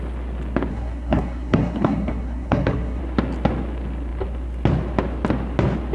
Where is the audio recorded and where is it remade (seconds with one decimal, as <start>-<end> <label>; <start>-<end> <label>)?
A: 0.0-0.7 recorded; 0.7-3.0 remade; 3.0-5.9 recorded